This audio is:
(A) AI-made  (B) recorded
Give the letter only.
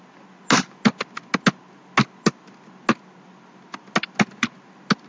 B